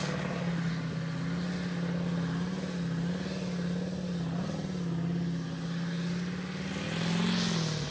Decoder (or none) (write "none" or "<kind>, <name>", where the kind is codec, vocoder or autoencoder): none